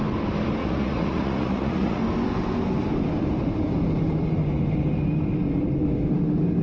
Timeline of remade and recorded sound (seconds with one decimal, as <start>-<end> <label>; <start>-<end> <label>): 0.0-0.6 recorded; 0.6-2.0 remade; 2.0-6.6 recorded